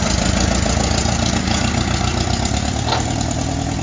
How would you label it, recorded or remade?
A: recorded